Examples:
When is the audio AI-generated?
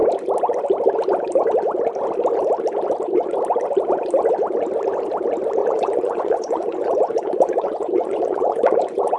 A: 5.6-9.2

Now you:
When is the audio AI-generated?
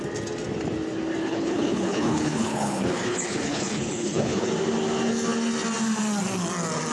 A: 1.2-4.5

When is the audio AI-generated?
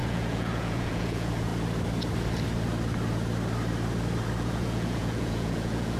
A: 0.0-1.5; 4.4-6.0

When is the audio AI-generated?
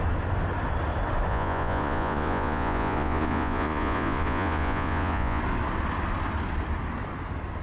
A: 1.3-5.4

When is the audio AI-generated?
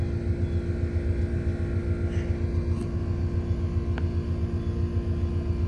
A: none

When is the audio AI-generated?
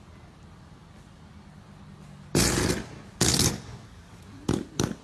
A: 3.3-4.2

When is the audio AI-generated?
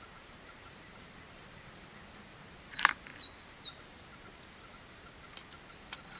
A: 0.0-1.9; 2.4-3.1; 3.8-4.3; 5.7-6.2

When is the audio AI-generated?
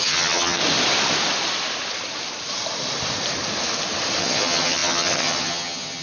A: 0.0-0.6; 4.2-6.0